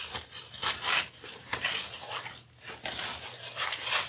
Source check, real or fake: real